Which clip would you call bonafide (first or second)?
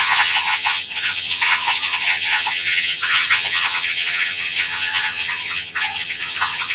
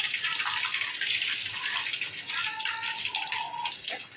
second